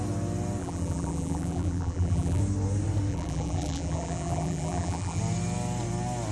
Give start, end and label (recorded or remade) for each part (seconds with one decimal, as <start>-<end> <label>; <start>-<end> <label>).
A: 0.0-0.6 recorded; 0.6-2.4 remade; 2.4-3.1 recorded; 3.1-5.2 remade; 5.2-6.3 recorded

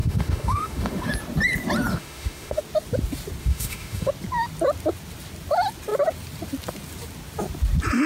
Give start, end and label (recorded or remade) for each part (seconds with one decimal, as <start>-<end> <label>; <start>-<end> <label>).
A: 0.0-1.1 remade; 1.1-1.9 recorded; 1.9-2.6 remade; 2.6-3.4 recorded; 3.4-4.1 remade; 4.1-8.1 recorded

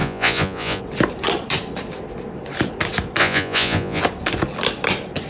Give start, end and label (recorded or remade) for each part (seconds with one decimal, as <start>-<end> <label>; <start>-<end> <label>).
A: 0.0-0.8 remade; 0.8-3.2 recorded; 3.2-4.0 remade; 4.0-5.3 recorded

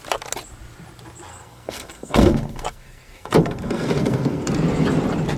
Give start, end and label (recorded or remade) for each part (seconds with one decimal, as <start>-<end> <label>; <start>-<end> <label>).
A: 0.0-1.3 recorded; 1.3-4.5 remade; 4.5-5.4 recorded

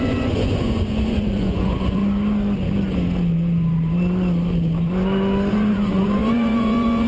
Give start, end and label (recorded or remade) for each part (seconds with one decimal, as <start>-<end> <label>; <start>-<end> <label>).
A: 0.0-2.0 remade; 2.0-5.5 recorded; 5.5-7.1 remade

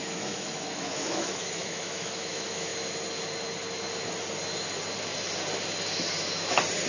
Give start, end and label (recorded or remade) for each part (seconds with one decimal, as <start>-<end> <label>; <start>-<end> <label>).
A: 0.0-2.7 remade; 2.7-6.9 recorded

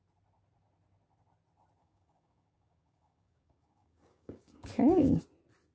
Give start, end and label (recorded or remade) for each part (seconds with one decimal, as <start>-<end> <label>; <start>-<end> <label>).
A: 0.0-1.8 recorded; 1.8-5.2 remade; 5.2-5.7 recorded